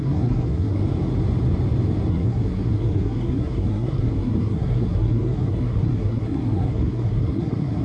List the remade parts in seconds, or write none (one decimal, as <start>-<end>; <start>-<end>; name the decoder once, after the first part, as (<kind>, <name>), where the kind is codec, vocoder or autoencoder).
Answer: 0.0-0.8 (codec, SNAC); 2.1-7.8

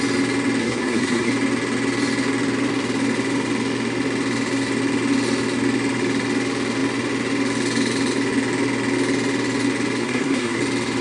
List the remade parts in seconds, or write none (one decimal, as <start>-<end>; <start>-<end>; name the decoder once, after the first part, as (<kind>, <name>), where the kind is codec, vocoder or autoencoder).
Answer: 0.6-1.3 (codec, SNAC); 10.0-10.6

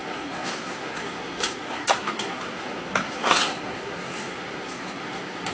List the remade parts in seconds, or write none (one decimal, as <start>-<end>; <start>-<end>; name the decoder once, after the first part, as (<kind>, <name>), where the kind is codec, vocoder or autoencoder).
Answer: 0.0-5.5 (codec, SNAC)

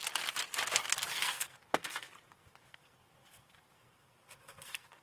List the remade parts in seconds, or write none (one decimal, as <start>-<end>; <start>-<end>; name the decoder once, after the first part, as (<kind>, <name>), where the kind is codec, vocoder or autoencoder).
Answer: 1.1-5.0 (codec, SNAC)